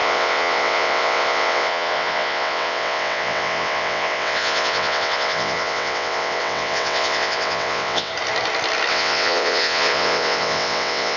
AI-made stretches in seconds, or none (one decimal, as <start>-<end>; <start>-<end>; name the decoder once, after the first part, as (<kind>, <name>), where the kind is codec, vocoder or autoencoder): 0.0-8.1 (vocoder, WaveNeXt); 8.9-11.2